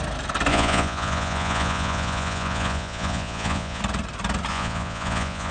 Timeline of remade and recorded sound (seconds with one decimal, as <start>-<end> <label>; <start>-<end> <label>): 0.0-0.5 recorded; 0.5-3.8 remade; 3.8-4.5 recorded; 4.5-5.5 remade